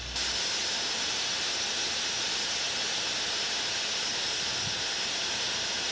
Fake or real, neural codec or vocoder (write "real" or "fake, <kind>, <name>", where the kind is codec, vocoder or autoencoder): real